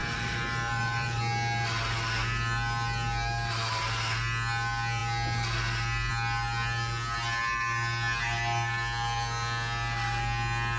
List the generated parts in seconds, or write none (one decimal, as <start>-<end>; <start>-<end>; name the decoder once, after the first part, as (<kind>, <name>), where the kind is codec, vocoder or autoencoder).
0.0-1.2 (vocoder, BigVGAN v2)

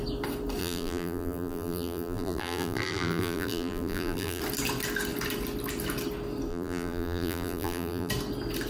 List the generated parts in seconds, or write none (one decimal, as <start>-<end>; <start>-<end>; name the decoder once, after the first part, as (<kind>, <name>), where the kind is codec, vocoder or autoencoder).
0.6-4.4 (vocoder, BigVGAN v2); 6.5-8.1

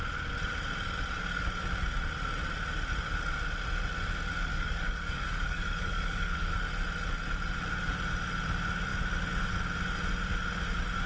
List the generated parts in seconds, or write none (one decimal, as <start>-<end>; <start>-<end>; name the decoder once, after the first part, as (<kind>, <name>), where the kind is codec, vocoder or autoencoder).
4.5-6.5 (codec, DAC)

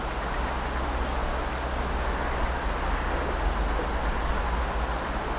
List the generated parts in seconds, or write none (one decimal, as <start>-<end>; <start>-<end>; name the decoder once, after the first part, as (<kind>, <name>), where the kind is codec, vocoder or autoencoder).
none